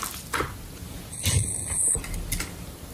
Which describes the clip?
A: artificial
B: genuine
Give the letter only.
B